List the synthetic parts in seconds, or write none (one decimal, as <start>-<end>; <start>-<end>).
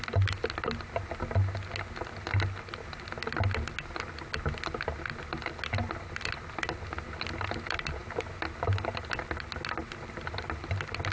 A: none